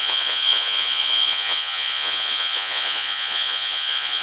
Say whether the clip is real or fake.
fake